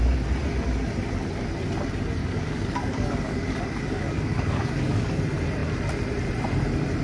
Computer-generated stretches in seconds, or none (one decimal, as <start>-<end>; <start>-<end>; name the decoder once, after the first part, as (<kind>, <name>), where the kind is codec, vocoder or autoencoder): 2.2-5.1 (codec, DAC)